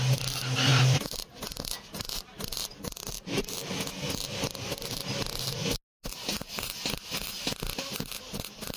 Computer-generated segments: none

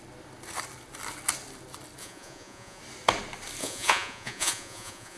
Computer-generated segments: 2.0-2.8 (vocoder, Vocos); 3.6-5.2

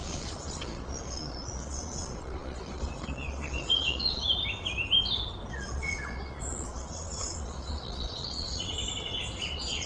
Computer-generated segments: 0.0-4.2 (vocoder, Vocos); 5.5-8.8; 9.4-9.9

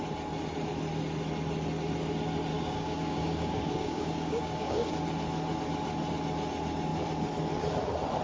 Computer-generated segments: 2.5-4.9 (codec, DAC)